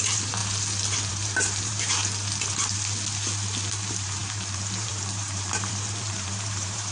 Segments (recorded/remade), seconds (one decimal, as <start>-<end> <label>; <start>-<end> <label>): 0.0-0.4 remade; 0.4-1.1 recorded; 1.1-2.0 remade; 2.0-3.7 recorded; 3.7-6.9 remade